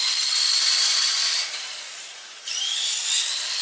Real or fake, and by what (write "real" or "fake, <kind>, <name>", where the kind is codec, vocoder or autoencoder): fake, vocoder, BigVGAN v2